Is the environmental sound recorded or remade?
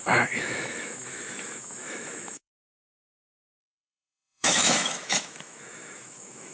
remade